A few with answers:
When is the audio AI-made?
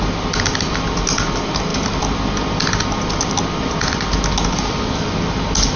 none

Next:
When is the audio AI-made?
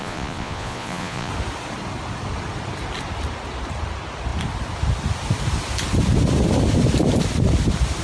0.0-1.3 (vocoder, Vocos)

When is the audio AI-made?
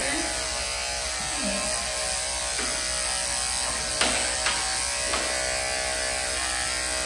none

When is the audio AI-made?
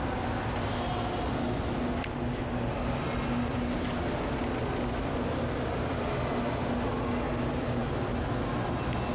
none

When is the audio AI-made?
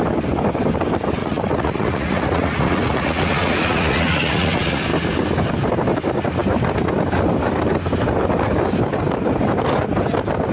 1.2-4.8 (vocoder, Vocos)